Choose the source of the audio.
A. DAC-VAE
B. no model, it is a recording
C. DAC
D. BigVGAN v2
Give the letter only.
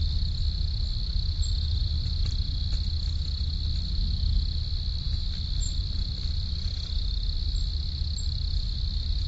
B